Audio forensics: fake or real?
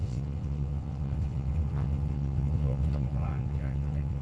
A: fake